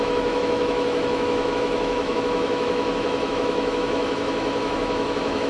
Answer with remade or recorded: remade